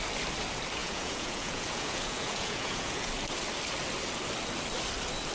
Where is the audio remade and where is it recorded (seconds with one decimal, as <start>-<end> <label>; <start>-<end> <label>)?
0.0-0.8 recorded; 0.8-3.1 remade; 3.1-5.3 recorded